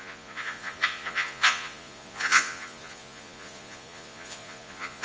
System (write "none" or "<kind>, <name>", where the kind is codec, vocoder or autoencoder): vocoder, Vocos